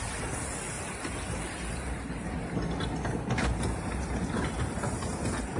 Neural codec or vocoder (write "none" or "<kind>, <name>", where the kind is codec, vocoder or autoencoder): none